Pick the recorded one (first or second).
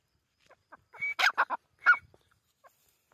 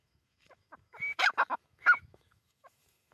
first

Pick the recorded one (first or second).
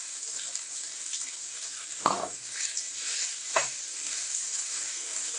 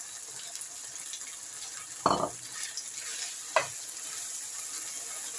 second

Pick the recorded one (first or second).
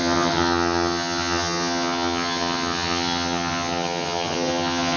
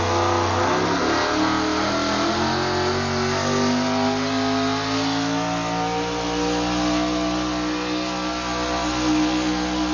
second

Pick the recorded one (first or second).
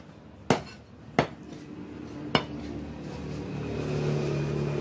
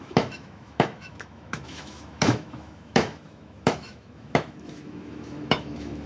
first